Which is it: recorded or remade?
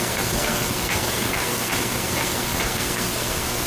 remade